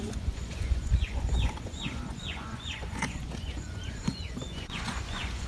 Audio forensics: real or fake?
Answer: fake